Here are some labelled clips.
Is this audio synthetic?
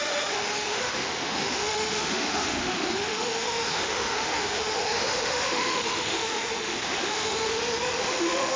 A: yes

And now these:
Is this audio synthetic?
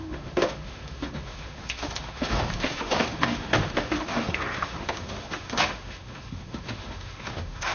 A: yes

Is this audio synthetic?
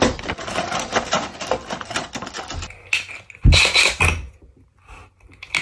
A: no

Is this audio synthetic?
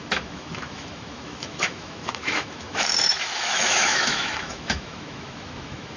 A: yes